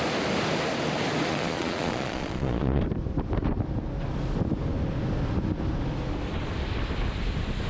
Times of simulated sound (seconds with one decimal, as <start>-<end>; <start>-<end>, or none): 1.3-2.8